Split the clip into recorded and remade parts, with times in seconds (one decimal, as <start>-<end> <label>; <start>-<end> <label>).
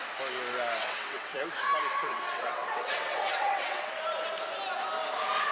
0.0-0.8 recorded; 0.8-1.4 remade; 1.4-2.0 recorded; 2.0-3.9 remade; 3.9-5.5 recorded